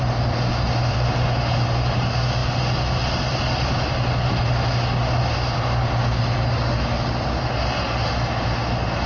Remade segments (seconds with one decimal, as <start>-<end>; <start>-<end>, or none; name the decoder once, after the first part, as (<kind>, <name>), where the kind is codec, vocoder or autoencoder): none